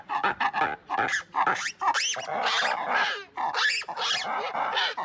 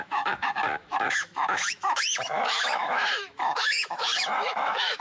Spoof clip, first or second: second